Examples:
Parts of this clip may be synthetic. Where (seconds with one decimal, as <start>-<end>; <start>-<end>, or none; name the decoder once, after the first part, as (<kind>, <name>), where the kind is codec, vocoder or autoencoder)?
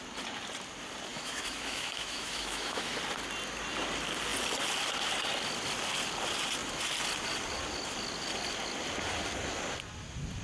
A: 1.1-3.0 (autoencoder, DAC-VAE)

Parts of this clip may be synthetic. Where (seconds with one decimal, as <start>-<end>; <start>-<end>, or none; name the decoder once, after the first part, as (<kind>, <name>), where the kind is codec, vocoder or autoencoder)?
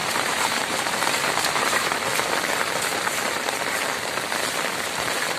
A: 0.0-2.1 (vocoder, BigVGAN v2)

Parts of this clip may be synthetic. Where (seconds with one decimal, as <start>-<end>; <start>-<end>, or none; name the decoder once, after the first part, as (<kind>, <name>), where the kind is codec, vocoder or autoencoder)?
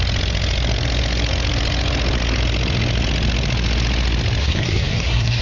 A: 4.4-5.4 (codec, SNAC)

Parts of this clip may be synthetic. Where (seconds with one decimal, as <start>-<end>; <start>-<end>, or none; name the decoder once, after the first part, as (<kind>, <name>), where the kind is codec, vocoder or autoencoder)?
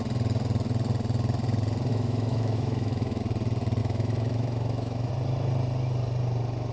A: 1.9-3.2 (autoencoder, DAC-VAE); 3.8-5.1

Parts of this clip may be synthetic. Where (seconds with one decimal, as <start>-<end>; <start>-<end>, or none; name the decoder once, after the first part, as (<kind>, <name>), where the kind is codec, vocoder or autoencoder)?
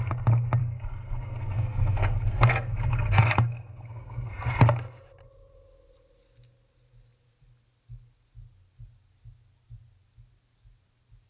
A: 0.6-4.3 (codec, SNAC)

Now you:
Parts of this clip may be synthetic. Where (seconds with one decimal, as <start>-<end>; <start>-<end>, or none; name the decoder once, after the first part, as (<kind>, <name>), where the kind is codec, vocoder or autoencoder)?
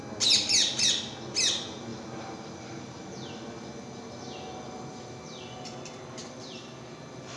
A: 1.9-3.0 (vocoder, BigVGAN v2); 6.2-6.9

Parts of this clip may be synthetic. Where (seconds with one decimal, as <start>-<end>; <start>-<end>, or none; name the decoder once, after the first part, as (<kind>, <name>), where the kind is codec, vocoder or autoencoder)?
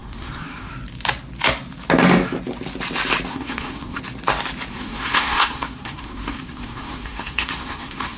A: 0.0-0.7 (codec, SNAC); 3.3-4.0; 4.7-8.2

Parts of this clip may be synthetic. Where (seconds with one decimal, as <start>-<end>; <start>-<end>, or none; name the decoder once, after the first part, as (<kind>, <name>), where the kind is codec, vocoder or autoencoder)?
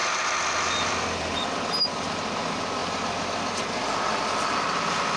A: 0.0-1.4 (vocoder, BigVGAN v2); 2.8-5.2